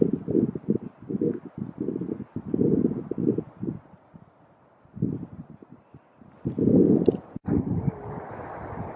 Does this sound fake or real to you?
real